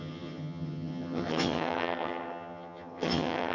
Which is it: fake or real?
fake